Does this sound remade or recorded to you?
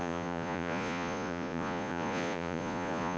remade